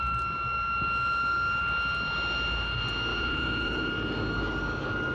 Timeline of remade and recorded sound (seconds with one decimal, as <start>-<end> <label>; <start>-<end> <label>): 0.0-3.1 recorded; 3.1-3.9 remade; 3.9-5.1 recorded